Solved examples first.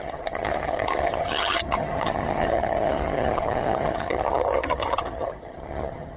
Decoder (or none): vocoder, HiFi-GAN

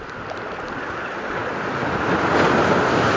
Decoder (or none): none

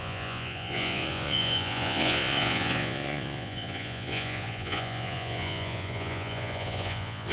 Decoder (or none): vocoder, Vocos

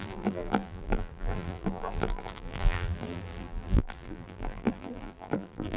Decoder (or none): vocoder, BigVGAN v2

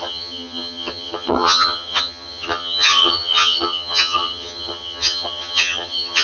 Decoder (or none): vocoder, HiFi-GAN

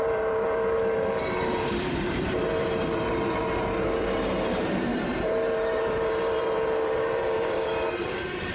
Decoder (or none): vocoder, BigVGAN v2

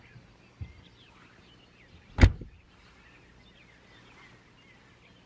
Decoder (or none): none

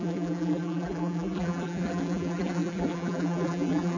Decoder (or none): vocoder, BigVGAN v2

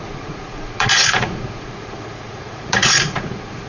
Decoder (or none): vocoder, Vocos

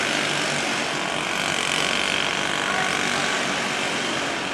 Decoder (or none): none